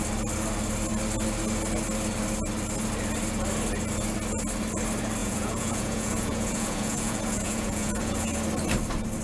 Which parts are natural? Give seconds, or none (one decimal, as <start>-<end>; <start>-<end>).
0.0-5.2; 8.4-9.2